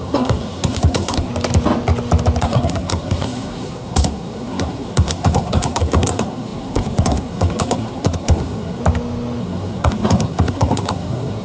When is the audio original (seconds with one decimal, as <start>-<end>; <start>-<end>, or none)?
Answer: 1.3-2.4; 8.8-9.4